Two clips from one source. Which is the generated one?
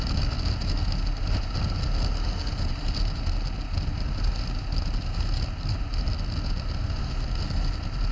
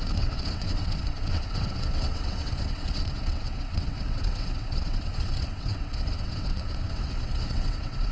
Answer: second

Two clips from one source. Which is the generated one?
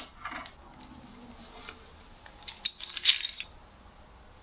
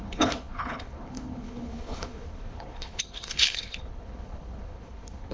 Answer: second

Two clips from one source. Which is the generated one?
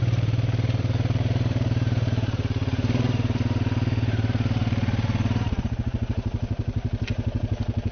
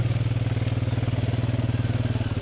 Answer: first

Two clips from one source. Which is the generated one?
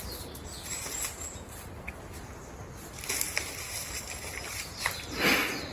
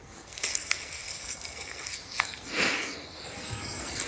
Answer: second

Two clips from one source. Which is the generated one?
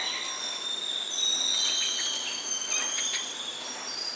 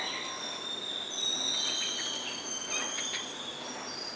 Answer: first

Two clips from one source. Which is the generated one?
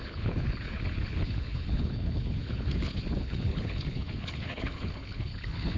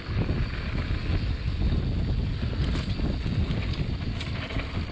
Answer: first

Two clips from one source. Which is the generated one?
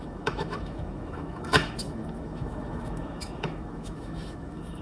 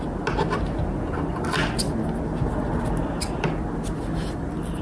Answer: first